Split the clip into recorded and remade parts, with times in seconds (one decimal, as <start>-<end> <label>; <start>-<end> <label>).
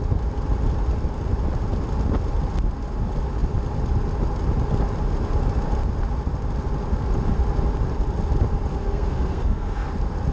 0.0-8.7 recorded; 8.7-9.9 remade; 9.9-10.3 recorded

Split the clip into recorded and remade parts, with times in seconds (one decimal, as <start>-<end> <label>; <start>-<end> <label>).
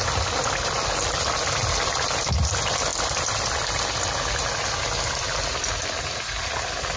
0.0-7.0 recorded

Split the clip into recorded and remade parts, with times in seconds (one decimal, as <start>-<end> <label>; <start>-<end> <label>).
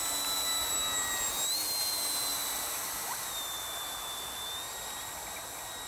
0.0-2.3 recorded; 2.3-5.9 remade